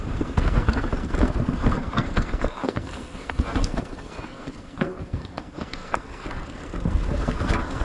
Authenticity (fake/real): fake